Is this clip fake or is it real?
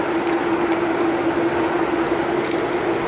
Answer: real